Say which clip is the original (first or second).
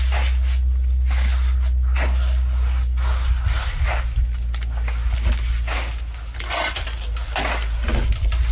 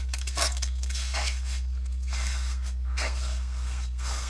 first